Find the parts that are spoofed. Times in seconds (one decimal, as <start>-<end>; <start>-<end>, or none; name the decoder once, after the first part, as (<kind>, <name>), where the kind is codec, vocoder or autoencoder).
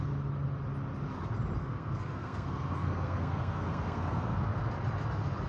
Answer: 1.6-4.7 (codec, SNAC)